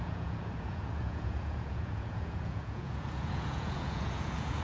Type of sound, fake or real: fake